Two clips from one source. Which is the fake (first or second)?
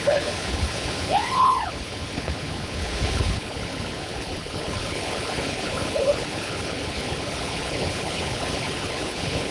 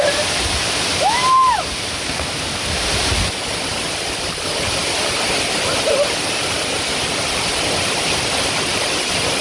first